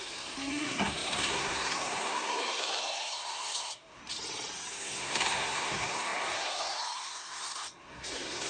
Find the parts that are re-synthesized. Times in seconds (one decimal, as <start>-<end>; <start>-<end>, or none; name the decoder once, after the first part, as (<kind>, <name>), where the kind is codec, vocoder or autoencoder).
0.0-4.0 (codec, SNAC); 4.7-8.5